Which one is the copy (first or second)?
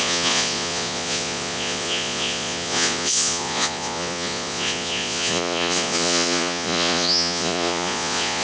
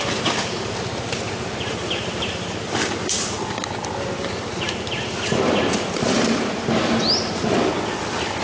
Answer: first